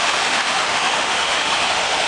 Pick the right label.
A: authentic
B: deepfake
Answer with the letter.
B